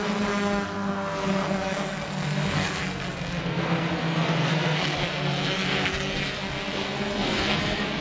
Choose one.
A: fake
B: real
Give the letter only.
A